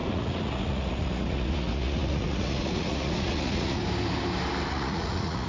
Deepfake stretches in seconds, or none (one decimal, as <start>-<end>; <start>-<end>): 0.0-3.8; 4.7-5.5